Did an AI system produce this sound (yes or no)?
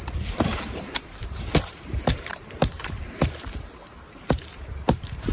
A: yes